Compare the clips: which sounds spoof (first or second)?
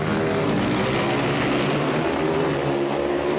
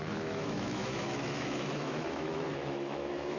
second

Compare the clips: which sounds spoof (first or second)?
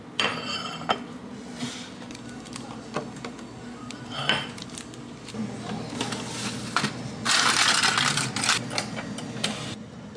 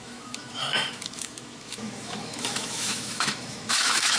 second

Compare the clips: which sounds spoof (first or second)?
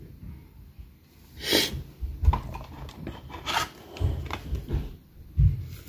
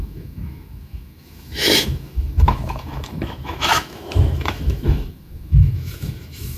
second